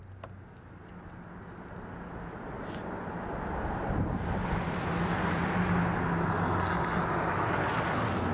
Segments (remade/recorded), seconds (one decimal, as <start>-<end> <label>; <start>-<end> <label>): 0.0-8.3 recorded